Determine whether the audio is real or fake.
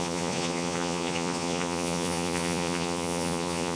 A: fake